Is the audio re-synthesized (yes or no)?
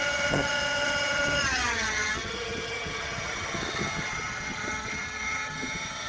yes